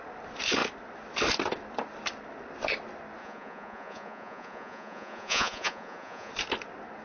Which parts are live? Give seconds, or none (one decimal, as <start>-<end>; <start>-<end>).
0.0-3.2; 6.3-7.0